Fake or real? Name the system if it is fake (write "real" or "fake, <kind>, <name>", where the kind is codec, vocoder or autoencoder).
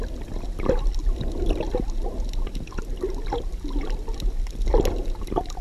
real